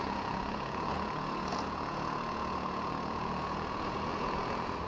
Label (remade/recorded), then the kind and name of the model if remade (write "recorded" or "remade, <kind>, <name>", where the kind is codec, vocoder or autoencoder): remade, vocoder, Vocos